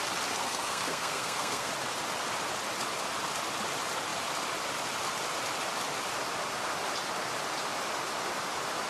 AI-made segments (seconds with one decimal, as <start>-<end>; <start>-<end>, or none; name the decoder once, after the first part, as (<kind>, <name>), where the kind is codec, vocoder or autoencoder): 0.4-1.7 (codec, SNAC)